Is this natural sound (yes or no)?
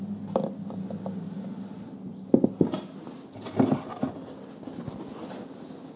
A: yes